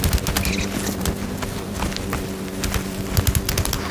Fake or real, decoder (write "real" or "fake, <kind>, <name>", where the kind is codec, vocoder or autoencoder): real